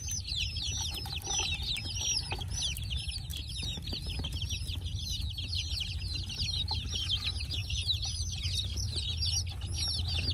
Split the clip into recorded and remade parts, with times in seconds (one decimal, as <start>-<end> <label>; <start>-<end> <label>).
0.0-1.3 remade; 1.3-3.3 recorded; 3.3-5.2 remade; 5.2-7.6 recorded; 7.6-8.4 remade; 8.4-10.3 recorded

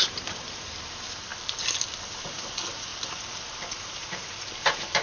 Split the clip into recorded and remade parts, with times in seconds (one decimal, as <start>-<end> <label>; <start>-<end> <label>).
0.0-1.3 remade; 1.3-2.2 recorded; 2.2-2.9 remade; 2.9-3.6 recorded; 3.6-5.0 remade